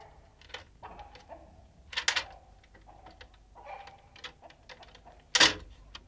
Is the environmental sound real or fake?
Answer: real